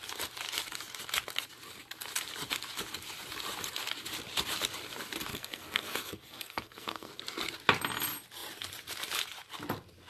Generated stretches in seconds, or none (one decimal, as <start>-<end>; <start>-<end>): 5.3-7.1

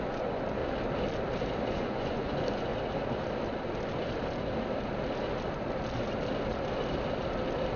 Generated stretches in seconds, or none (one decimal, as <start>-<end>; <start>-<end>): 0.0-0.6; 1.7-2.7

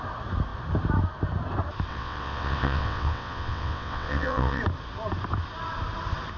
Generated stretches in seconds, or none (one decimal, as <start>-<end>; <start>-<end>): 1.9-4.6

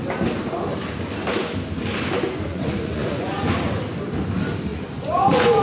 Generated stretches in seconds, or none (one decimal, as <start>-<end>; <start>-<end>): 2.5-3.5; 4.7-5.6